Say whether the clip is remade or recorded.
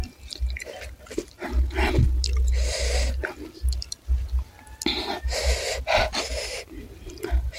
recorded